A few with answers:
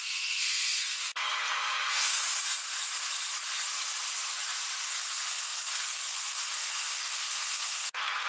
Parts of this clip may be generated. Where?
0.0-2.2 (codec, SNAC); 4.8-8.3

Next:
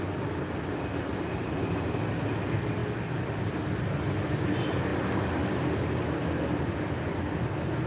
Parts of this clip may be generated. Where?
none

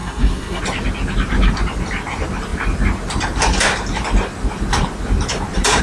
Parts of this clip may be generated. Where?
0.0-0.6 (codec, SNAC)

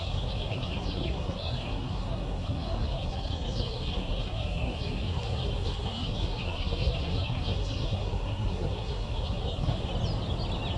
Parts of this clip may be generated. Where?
0.0-9.9 (codec, SNAC)

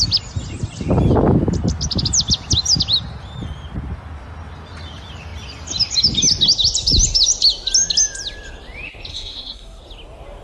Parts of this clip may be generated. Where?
9.1-9.8 (codec, SNAC)

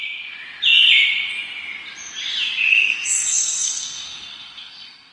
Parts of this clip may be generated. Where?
2.7-5.1 (codec, SNAC)